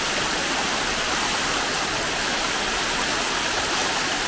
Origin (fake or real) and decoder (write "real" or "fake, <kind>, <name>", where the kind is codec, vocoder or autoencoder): real